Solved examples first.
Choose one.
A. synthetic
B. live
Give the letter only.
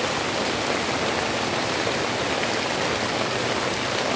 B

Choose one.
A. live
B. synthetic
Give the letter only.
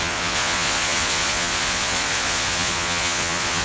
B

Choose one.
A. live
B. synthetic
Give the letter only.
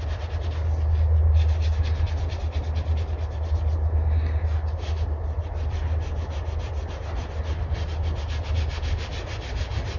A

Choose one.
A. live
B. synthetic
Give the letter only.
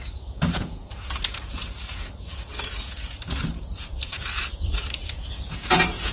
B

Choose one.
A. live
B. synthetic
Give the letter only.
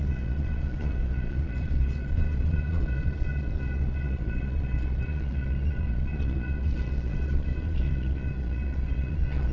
B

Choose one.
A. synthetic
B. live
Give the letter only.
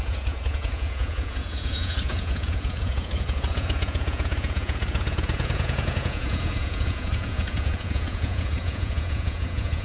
A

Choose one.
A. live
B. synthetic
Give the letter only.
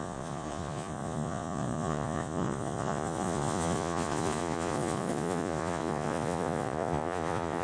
B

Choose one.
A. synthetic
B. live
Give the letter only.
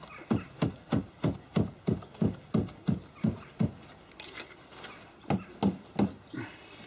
B